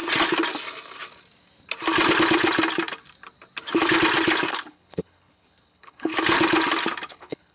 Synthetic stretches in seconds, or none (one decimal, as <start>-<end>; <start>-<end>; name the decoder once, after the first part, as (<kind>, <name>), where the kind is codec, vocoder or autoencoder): 4.5-6.1 (codec, HILCodec); 7.1-7.5